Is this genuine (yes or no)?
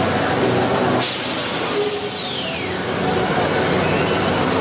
yes